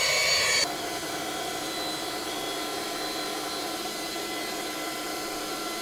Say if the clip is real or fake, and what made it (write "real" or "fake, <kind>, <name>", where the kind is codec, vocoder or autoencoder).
real